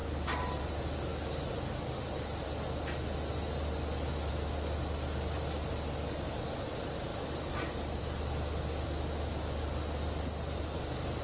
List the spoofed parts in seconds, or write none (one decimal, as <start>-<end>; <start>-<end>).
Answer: 0.0-0.6